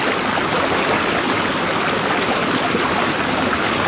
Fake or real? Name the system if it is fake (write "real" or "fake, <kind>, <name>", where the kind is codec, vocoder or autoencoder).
real